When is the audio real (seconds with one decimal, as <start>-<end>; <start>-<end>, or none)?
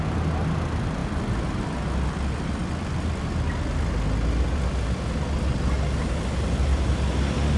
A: 0.0-2.6; 3.3-6.7